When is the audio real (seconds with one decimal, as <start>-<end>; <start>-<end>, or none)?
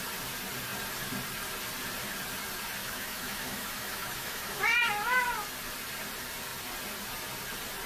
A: 0.0-2.8; 4.6-7.9